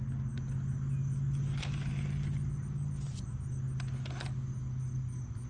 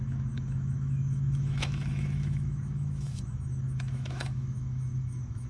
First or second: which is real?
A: first